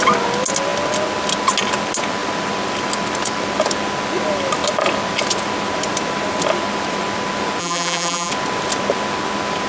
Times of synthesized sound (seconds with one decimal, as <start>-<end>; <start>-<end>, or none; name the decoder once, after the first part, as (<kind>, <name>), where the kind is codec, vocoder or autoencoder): 7.6-8.3 (vocoder, BigVGAN v2)